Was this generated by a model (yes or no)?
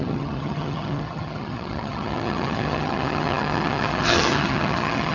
yes